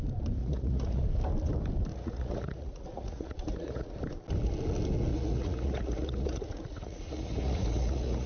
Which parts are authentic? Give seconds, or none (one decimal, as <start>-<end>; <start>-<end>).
0.0-0.4; 1.0-1.9; 3.9-5.1